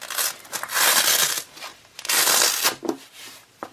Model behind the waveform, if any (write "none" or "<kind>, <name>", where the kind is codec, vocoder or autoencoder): none